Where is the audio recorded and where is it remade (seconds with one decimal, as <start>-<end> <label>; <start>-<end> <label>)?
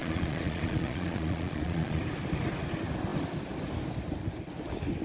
0.0-2.0 remade; 2.0-5.0 recorded